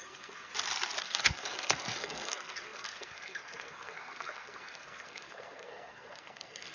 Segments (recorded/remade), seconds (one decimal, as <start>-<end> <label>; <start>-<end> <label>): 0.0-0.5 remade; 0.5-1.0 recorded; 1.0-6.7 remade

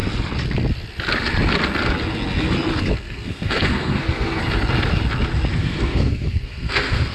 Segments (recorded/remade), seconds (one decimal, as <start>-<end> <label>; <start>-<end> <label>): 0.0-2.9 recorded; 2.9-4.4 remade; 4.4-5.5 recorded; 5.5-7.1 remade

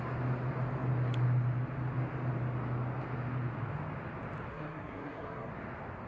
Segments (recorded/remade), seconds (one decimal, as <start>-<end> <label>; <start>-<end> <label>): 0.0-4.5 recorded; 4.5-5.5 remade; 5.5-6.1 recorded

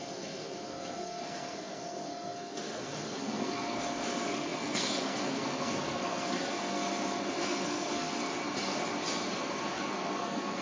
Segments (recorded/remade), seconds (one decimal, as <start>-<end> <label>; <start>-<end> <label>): 0.0-8.3 remade; 8.3-9.4 recorded; 9.4-10.6 remade